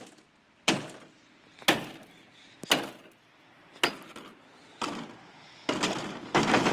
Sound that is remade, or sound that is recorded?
recorded